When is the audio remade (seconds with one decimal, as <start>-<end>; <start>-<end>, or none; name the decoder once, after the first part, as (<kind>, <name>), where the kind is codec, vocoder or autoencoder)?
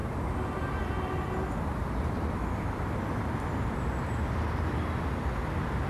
none